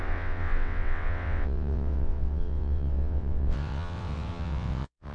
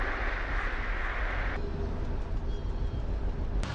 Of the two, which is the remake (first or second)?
first